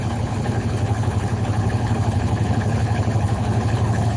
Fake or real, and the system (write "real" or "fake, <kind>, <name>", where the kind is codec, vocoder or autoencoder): fake, codec, HILCodec